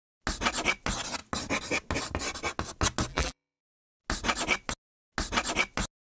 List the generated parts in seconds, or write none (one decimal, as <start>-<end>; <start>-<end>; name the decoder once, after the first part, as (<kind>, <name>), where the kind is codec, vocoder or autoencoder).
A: 3.1-3.6 (vocoder, BigVGAN v2)